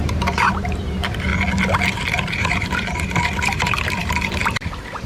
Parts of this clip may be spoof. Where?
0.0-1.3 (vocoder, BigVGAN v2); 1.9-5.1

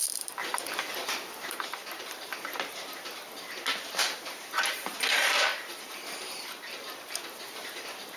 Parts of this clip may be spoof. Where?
0.0-0.4 (vocoder, BigVGAN v2); 1.5-2.3; 3.0-8.2

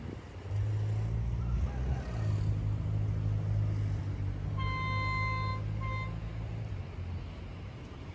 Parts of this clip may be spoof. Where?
none